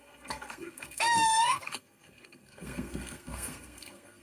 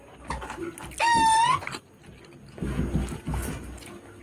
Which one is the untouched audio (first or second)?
second